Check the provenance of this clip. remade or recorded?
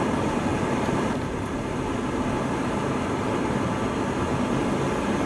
remade